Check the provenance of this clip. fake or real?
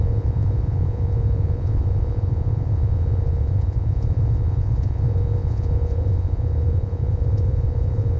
fake